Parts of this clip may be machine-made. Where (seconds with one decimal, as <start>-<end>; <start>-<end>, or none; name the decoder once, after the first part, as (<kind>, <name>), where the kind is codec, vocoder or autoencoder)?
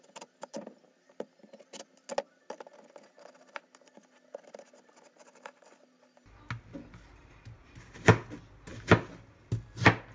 none